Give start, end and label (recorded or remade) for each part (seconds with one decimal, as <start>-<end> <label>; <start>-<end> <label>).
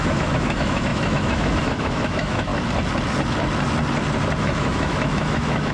0.0-2.5 remade; 2.5-4.4 recorded; 4.4-5.7 remade